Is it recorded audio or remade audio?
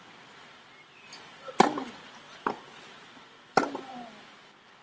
recorded